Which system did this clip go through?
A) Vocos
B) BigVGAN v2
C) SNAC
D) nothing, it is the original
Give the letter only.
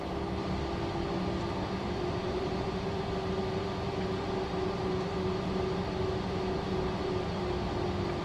D